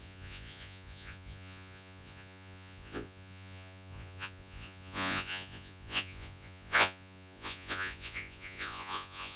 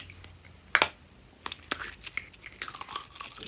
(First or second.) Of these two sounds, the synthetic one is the first